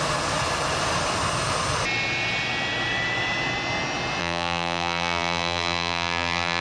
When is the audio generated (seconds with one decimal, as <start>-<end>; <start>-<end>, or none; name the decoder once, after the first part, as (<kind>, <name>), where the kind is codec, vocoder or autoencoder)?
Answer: 4.2-6.6 (vocoder, BigVGAN v2)